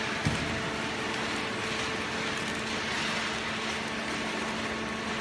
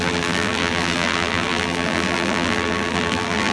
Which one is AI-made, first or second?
second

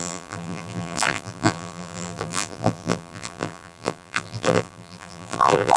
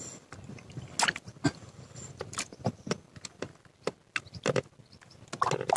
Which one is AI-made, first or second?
first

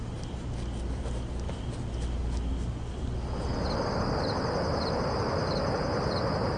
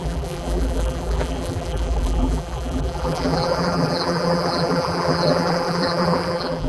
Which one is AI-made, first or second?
second